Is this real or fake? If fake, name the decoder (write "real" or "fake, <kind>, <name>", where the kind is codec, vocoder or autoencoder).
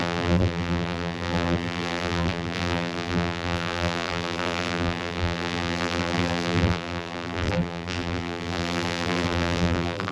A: fake, vocoder, BigVGAN v2